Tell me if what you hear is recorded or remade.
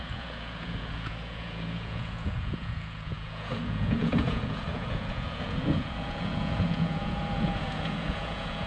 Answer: remade